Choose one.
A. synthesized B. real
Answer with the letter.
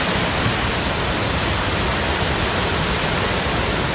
B